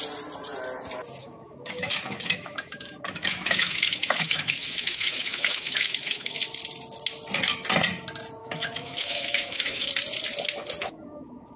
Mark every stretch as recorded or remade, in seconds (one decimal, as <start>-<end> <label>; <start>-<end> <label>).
0.0-1.2 recorded; 1.2-6.4 remade; 6.4-8.4 recorded; 8.4-9.9 remade; 9.9-10.8 recorded; 10.8-11.6 remade